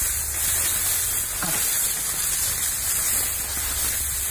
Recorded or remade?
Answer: recorded